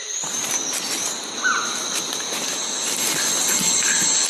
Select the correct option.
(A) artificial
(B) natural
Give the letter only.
B